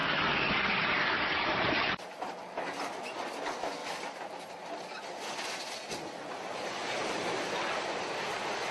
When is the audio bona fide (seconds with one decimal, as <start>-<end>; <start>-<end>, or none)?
0.0-8.7